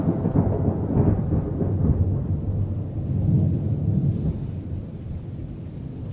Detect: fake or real real